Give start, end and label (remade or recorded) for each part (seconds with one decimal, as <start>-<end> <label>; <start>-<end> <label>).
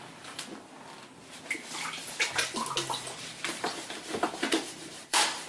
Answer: 0.0-3.3 recorded; 3.3-5.5 remade